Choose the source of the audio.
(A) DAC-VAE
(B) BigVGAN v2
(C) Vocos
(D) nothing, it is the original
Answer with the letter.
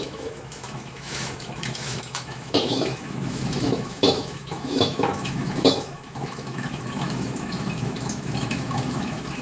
A